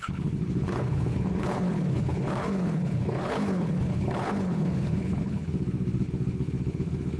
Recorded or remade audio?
remade